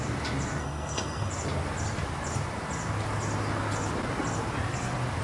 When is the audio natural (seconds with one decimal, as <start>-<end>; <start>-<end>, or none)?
0.0-0.6; 1.3-5.2